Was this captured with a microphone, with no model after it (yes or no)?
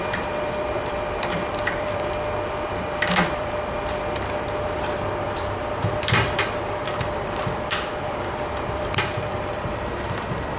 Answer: no